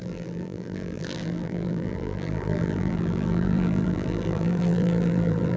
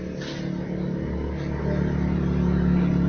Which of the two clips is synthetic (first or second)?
first